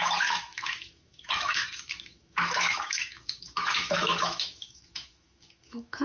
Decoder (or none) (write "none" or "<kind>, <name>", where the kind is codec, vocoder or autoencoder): autoencoder, DAC-VAE